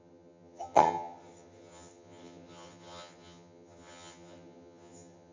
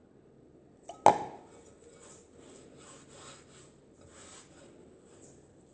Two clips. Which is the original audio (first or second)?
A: second